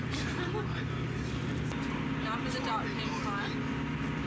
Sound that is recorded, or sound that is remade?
recorded